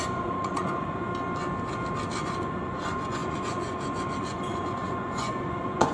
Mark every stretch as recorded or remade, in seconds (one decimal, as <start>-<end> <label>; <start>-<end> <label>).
0.0-1.0 remade; 1.0-2.2 recorded; 2.2-5.9 remade